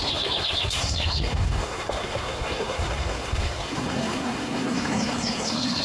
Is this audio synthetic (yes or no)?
yes